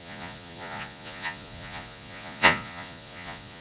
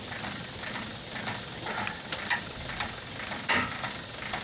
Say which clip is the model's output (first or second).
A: first